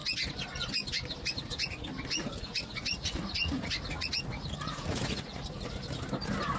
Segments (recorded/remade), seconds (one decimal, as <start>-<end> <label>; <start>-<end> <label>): 0.0-2.2 recorded; 2.2-5.8 remade; 5.8-6.6 recorded